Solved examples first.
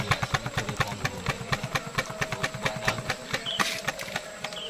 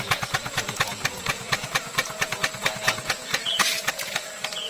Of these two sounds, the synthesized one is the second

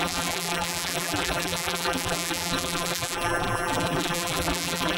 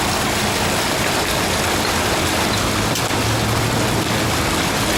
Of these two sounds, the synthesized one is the first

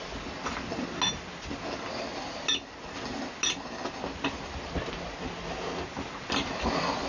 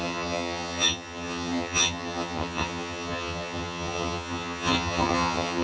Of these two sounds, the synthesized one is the second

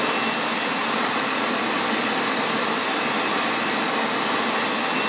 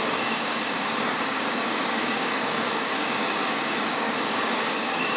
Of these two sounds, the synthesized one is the second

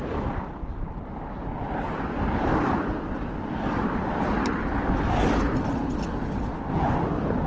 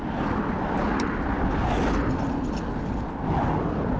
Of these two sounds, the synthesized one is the first